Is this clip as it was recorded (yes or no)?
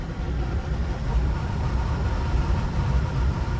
no